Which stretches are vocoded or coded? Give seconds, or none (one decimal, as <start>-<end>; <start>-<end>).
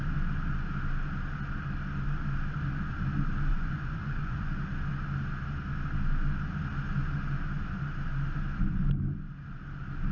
3.5-4.5